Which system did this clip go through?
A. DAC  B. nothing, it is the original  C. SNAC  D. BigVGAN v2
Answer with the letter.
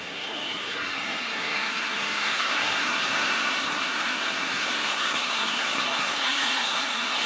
C